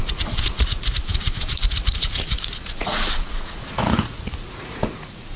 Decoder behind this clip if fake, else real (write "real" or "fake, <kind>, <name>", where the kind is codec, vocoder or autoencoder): fake, vocoder, Vocos